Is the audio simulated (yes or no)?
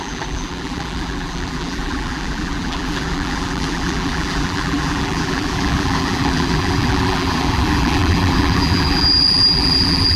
yes